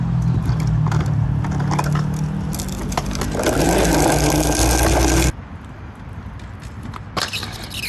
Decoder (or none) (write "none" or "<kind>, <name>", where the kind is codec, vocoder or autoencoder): none